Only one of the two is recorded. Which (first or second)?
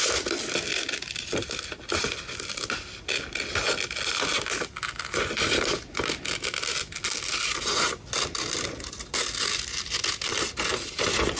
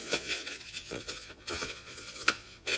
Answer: first